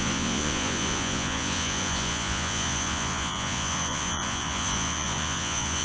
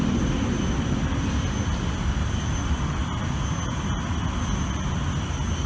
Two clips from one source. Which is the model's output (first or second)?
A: first